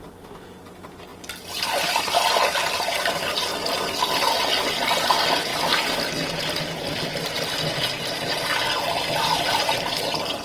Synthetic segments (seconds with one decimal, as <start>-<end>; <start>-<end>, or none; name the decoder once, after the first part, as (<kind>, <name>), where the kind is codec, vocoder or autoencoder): 1.1-2.0 (vocoder, BigVGAN v2); 3.5-4.5; 5.5-8.6